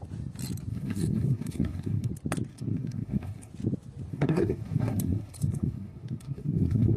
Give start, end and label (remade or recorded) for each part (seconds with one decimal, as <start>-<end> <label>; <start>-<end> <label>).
0.0-0.7 recorded; 0.7-2.1 remade; 2.1-2.5 recorded; 2.5-3.5 remade; 3.5-4.1 recorded; 4.1-7.0 remade